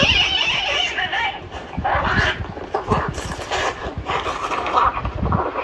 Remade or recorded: remade